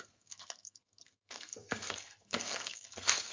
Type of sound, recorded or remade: remade